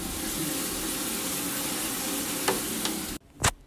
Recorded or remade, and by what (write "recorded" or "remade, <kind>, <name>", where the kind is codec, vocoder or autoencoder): recorded